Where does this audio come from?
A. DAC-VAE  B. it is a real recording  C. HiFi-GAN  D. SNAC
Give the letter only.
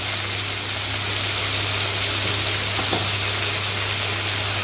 B